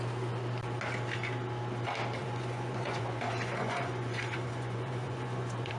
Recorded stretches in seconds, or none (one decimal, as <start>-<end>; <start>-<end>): 0.0-2.2